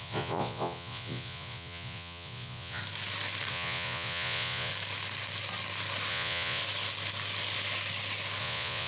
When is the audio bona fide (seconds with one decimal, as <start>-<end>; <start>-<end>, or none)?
2.8-3.5; 4.7-6.1; 6.6-8.4